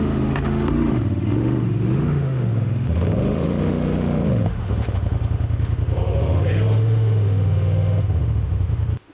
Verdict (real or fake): fake